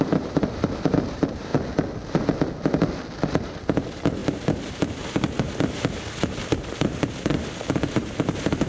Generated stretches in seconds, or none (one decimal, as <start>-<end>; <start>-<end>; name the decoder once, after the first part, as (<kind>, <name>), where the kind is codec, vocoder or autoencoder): 0.0-1.5 (vocoder, BigVGAN v2); 3.3-8.7